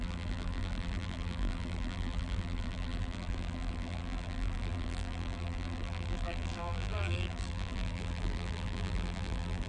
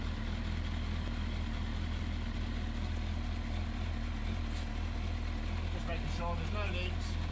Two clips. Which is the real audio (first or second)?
second